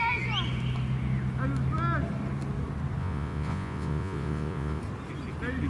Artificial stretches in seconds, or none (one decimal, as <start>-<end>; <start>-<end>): 3.0-4.8